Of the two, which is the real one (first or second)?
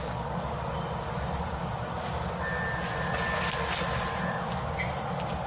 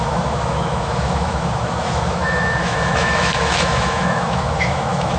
first